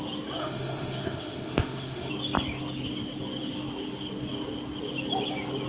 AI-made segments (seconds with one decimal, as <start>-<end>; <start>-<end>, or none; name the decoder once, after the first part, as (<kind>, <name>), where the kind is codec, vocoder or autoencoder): 0.4-2.1 (autoencoder, DAC-VAE)